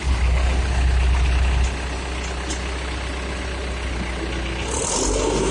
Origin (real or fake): real